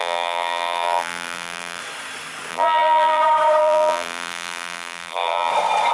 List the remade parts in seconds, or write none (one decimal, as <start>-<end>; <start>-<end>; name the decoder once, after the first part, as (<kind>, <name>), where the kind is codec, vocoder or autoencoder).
0.0-1.8 (vocoder, BigVGAN v2); 2.5-3.2; 3.6-5.5